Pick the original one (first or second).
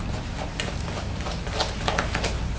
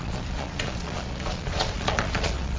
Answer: first